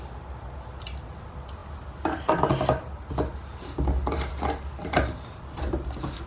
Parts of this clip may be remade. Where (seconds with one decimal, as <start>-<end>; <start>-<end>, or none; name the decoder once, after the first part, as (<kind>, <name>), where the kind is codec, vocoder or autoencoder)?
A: none